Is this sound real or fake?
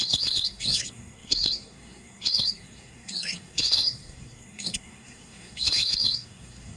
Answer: fake